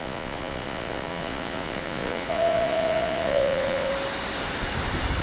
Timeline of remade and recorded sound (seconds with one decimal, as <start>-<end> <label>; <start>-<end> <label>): 0.0-3.9 remade; 3.9-5.2 recorded